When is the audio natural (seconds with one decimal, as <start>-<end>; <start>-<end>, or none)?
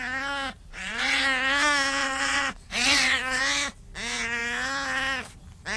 0.0-0.7; 1.2-2.0; 3.4-5.8